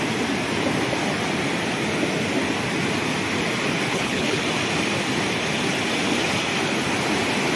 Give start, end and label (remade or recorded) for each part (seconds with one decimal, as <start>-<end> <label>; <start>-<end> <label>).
0.0-3.9 recorded; 3.9-4.4 remade; 4.4-7.6 recorded